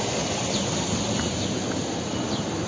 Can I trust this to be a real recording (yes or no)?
yes